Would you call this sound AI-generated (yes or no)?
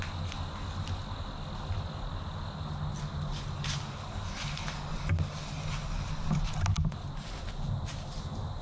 no